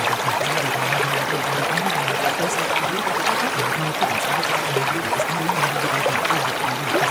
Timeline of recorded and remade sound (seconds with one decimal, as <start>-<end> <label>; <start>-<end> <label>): 0.0-7.1 recorded